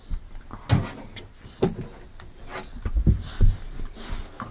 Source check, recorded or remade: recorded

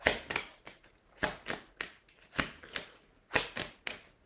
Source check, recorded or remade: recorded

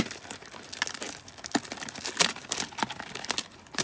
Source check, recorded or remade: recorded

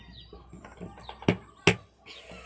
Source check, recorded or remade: recorded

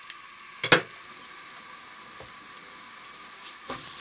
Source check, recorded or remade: recorded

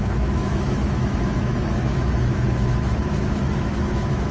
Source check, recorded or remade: remade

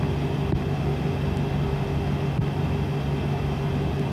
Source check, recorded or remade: recorded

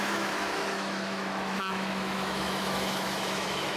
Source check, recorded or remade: remade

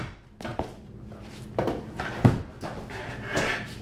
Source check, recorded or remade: recorded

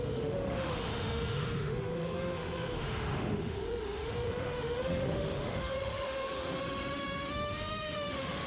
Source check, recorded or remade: remade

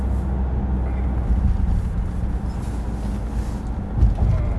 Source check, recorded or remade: recorded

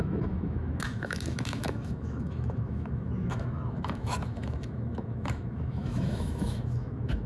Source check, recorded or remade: remade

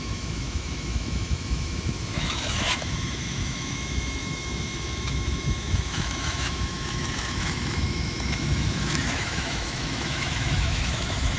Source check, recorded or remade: remade